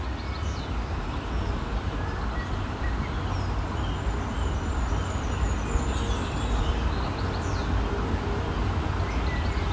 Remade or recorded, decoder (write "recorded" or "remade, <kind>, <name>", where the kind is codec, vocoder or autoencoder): recorded